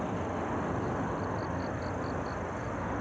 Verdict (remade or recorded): recorded